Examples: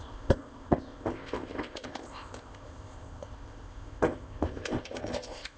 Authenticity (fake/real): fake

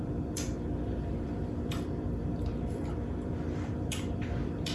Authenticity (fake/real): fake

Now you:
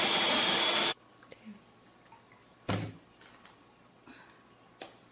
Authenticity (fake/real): real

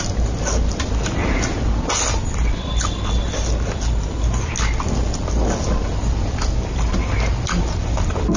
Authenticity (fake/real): real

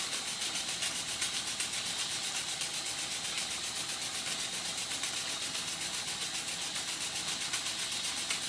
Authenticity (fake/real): real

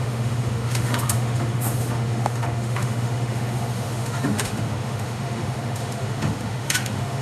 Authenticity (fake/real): fake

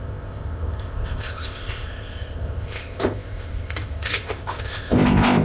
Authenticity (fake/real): fake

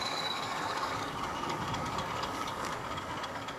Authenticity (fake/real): fake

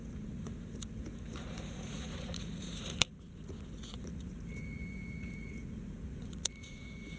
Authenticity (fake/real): fake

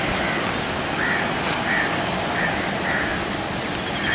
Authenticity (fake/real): real